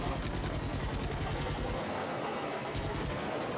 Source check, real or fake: fake